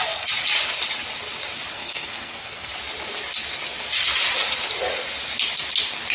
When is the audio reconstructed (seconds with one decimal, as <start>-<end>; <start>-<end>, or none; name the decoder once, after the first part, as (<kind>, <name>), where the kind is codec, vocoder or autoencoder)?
1.7-2.7 (codec, SNAC)